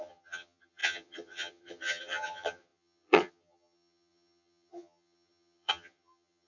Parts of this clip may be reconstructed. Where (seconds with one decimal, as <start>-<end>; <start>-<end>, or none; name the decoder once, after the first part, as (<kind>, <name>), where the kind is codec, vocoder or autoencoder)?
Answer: 0.0-6.5 (vocoder, HiFi-GAN)